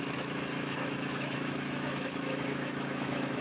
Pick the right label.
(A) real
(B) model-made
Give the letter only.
B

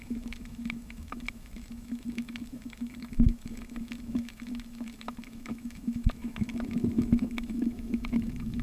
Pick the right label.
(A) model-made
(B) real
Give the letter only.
A